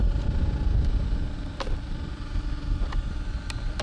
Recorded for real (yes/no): yes